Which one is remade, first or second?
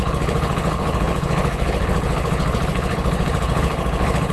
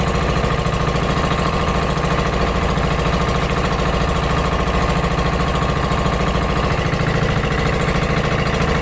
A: first